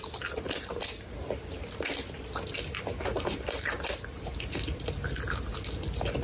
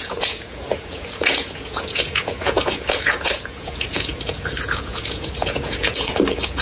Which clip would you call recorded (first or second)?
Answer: first